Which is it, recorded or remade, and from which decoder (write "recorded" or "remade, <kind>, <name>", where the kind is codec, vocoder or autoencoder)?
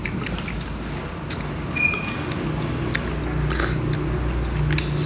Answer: recorded